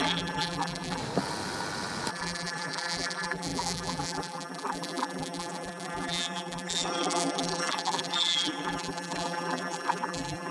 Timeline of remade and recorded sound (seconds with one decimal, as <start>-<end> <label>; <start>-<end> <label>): 0.0-1.0 remade; 1.0-2.1 recorded; 2.1-10.5 remade